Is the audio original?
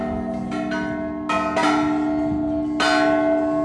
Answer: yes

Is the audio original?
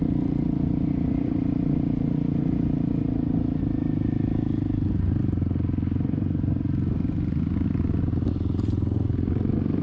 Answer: yes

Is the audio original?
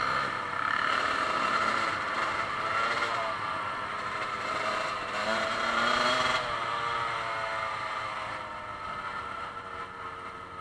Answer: no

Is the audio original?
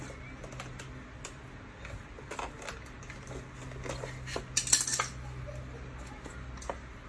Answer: yes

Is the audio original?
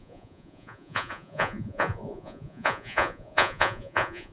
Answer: no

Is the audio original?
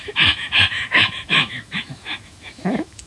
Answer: no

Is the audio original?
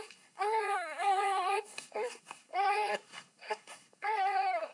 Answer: no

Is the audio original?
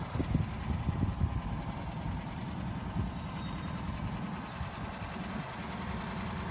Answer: yes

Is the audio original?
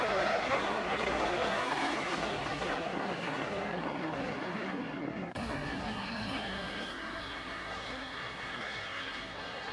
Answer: no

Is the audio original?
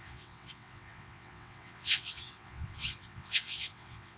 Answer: no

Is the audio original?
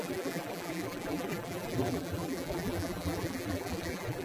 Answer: no